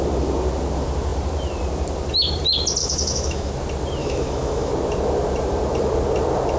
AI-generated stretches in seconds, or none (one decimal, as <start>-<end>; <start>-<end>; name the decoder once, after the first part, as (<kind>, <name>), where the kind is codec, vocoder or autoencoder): 2.8-3.5 (autoencoder, DAC-VAE); 4.0-4.7